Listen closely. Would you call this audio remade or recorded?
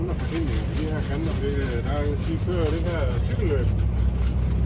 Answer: recorded